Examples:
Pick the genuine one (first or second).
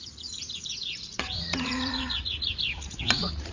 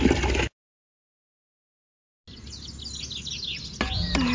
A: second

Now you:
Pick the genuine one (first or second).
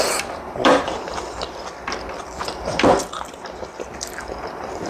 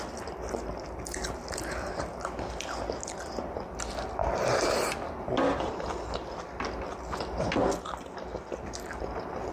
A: second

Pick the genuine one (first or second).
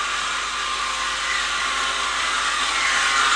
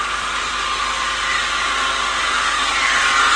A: first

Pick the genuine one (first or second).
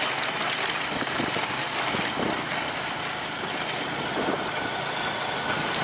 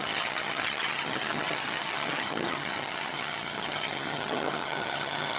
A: first